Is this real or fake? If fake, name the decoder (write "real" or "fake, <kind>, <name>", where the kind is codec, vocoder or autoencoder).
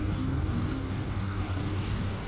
fake, codec, DAC